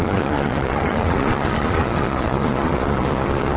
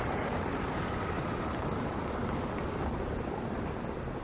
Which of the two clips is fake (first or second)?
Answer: first